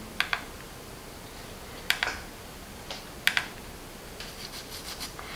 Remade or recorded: recorded